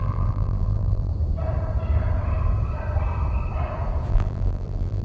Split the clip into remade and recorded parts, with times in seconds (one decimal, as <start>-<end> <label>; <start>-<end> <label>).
0.0-1.1 remade; 1.1-4.1 recorded; 4.1-5.0 remade